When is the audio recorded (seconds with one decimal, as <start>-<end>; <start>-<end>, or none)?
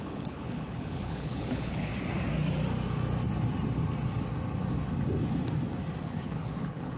1.9-6.0